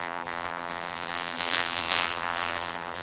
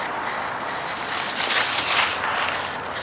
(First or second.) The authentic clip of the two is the second